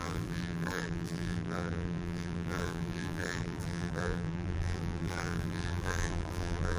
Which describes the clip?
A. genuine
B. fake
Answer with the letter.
B